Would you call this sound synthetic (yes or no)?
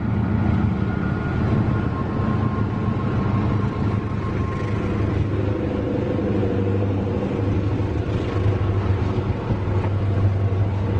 no